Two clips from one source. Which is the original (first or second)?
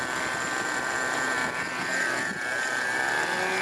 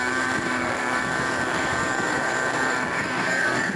first